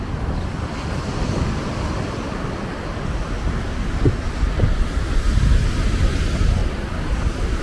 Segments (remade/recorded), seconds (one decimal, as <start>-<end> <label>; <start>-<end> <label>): 0.0-6.6 recorded; 6.6-7.6 remade